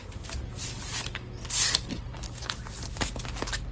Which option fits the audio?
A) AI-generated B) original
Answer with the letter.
B